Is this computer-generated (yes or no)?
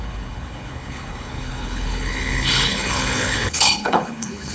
yes